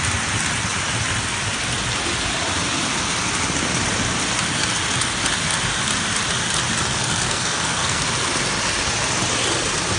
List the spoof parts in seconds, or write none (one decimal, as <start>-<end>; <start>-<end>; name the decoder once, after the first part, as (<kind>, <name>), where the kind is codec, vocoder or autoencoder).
6.9-8.0 (codec, SNAC)